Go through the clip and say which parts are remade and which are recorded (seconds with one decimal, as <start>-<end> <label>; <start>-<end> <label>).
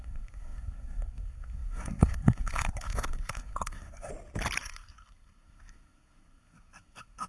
0.0-4.1 remade; 4.1-4.6 recorded; 4.6-7.3 remade